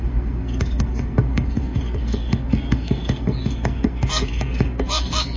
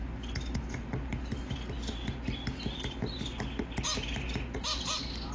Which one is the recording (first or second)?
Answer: second